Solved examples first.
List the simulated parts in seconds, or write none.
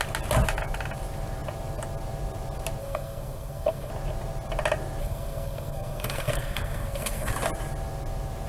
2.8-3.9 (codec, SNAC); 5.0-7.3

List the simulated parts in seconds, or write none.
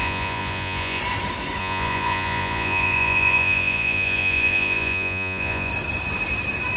0.0-1.0 (vocoder, Vocos); 1.6-5.7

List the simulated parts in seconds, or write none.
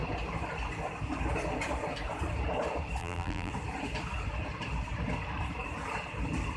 3.0-3.5 (vocoder, BigVGAN v2)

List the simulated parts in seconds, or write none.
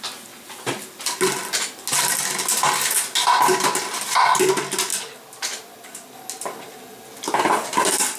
none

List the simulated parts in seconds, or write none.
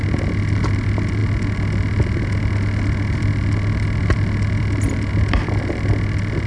none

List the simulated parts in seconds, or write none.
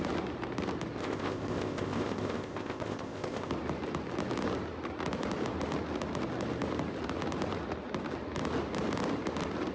1.0-3.5 (codec, ZipCodec)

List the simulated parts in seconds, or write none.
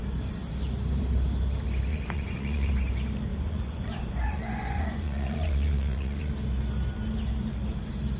1.9-2.7 (vocoder, Vocos); 3.3-6.3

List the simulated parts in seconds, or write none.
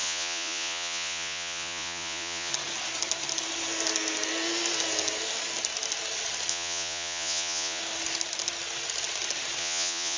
0.0-2.5 (vocoder, Vocos); 6.5-7.8; 9.6-10.2